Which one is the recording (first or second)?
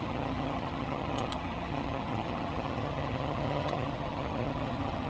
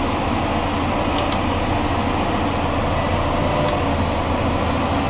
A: second